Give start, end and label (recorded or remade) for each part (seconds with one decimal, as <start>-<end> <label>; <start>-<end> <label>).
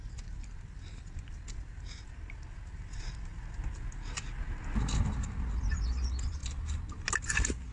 0.0-7.7 recorded